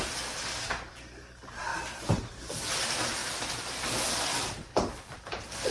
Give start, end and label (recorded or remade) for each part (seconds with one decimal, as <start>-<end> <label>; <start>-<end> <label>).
0.0-3.2 recorded; 3.2-3.8 remade; 3.8-4.3 recorded; 4.3-5.7 remade